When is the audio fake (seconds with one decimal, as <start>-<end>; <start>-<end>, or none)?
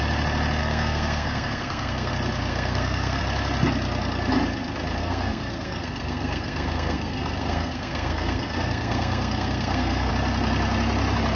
0.6-2.1; 2.5-3.2; 5.0-10.1